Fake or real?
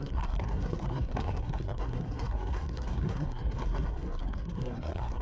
fake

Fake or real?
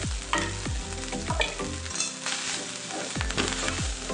real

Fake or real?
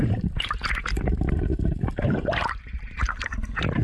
fake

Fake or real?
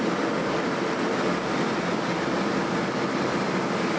real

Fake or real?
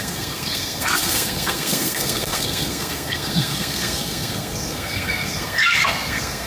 fake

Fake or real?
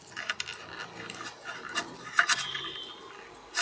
real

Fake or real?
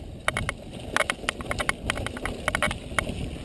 real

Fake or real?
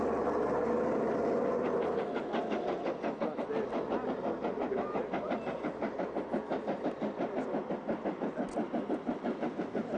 real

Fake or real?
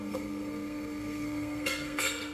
fake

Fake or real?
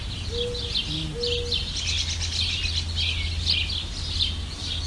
real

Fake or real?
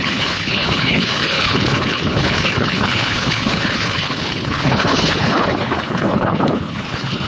fake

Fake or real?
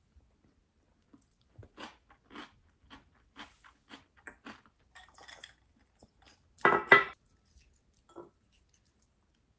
real